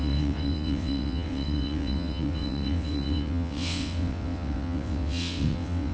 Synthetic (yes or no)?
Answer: yes